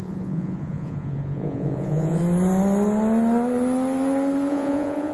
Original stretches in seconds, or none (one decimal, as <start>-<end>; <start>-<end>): 2.2-4.5